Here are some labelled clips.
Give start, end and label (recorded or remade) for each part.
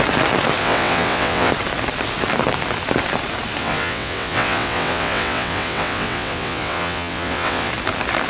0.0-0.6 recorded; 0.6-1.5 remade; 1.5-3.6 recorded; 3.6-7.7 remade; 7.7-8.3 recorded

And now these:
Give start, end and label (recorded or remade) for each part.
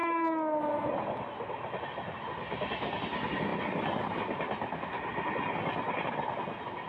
0.0-6.9 recorded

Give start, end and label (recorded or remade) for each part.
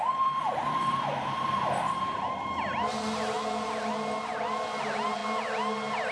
0.0-1.1 remade; 1.1-4.8 recorded; 4.8-5.2 remade; 5.2-6.1 recorded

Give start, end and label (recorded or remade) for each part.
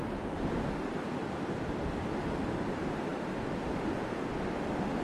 0.0-5.0 recorded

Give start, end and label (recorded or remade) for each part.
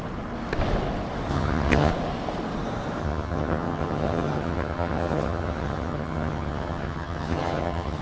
0.0-1.3 recorded; 1.3-1.9 remade; 1.9-3.0 recorded; 3.0-8.0 remade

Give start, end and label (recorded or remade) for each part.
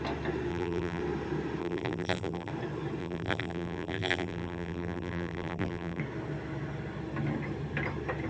0.0-0.5 recorded; 0.5-1.0 remade; 1.0-1.6 recorded; 1.6-2.5 remade; 2.5-3.0 recorded; 3.0-6.0 remade; 6.0-8.3 recorded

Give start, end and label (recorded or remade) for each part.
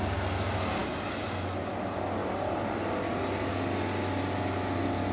0.0-5.1 recorded